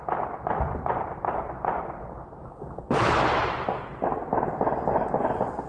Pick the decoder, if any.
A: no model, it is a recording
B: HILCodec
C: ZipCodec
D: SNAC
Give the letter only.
A